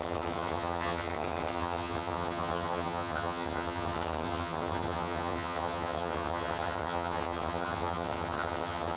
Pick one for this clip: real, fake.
fake